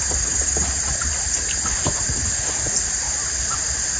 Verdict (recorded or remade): recorded